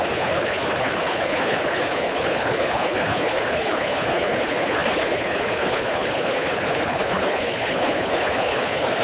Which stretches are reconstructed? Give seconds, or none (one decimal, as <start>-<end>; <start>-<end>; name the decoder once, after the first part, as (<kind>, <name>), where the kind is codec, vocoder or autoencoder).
0.0-9.0 (codec, HILCodec)

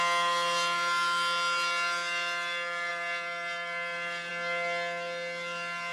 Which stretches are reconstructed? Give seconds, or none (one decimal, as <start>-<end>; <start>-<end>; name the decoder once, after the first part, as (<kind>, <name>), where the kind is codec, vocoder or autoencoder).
2.9-4.3 (vocoder, BigVGAN v2)

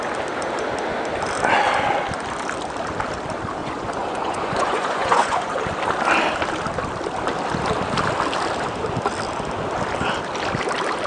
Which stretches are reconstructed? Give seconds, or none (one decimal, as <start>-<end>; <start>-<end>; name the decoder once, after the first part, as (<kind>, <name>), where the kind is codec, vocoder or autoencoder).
3.6-5.6 (vocoder, Vocos)

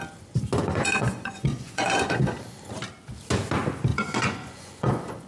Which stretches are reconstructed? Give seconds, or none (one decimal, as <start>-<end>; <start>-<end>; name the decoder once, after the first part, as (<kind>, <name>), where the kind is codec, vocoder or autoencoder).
0.6-2.4 (vocoder, Vocos); 3.9-5.3